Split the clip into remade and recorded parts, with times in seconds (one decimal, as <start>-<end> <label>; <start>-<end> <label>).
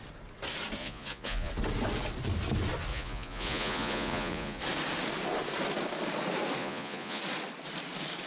0.0-0.8 recorded; 0.8-1.5 remade; 1.5-2.9 recorded; 2.9-4.6 remade; 4.6-6.6 recorded; 6.6-7.2 remade; 7.2-8.3 recorded